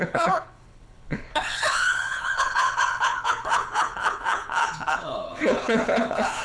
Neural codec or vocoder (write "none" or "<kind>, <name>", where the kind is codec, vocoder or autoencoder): codec, HILCodec